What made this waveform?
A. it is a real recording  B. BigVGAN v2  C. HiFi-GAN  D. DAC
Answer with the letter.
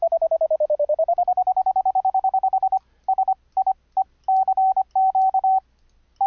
A